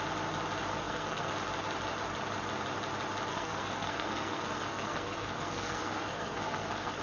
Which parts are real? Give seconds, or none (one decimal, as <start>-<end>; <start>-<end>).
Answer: 0.0-0.7; 1.3-3.3